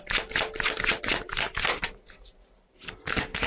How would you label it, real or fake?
real